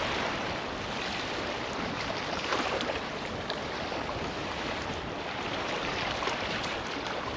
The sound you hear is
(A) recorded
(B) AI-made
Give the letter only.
B